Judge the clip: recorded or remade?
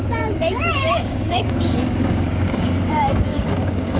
remade